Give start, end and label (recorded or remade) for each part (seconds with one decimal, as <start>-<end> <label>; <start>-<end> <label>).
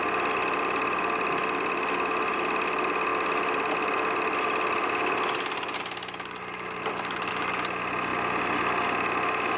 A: 0.0-9.6 recorded